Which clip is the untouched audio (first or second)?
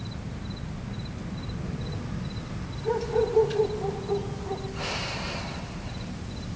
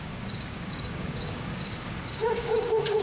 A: first